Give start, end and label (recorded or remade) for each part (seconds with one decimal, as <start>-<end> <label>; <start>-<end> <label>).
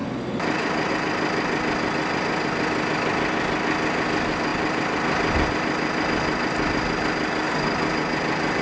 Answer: 0.0-8.6 recorded